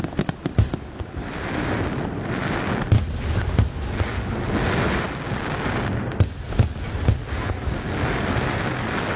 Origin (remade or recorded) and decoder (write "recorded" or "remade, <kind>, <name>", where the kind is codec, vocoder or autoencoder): recorded